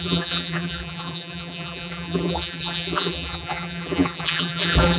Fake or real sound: fake